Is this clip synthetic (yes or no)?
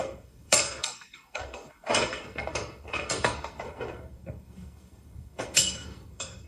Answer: yes